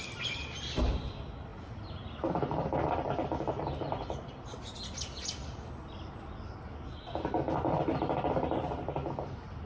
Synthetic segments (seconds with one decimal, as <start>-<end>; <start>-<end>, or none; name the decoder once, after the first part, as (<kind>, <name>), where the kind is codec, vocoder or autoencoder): none